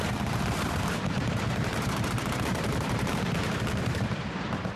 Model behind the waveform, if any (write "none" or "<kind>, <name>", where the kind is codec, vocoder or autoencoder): vocoder, BigVGAN v2